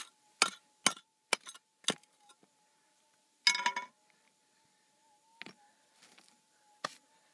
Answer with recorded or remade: recorded